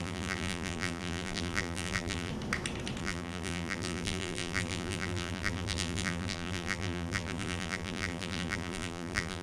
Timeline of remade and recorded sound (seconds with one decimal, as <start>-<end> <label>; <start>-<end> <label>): 0.0-2.3 remade; 2.3-3.0 recorded; 3.0-9.4 remade